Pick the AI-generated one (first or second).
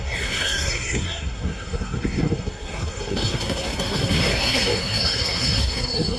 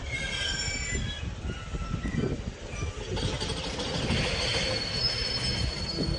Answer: first